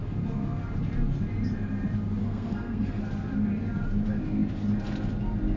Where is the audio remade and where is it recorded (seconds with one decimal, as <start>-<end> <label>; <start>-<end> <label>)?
0.0-2.2 recorded; 2.2-3.0 remade; 3.0-5.6 recorded